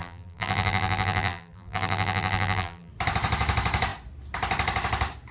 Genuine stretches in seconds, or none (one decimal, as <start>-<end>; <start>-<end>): 2.9-5.3